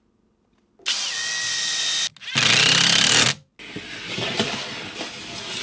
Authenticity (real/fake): real